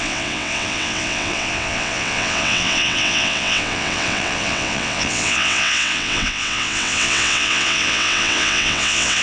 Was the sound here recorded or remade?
remade